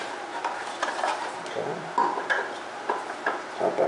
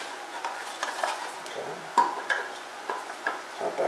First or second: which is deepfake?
second